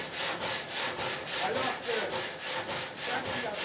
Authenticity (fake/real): real